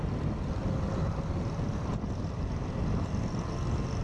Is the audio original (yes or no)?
yes